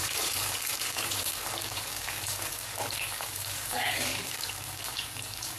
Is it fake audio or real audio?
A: fake